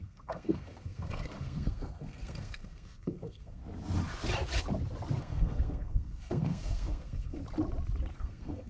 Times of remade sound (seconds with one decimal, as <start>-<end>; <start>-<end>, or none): 0.0-3.6; 5.2-7.4; 8.1-8.7